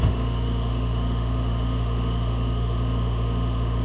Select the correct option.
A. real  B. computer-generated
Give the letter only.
B